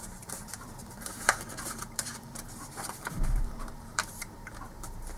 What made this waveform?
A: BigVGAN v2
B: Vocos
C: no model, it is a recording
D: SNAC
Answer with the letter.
A